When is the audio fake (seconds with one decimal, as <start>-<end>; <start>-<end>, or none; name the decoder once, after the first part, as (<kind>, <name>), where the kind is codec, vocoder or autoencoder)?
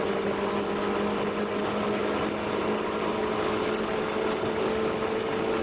none